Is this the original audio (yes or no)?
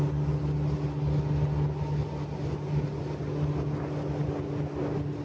yes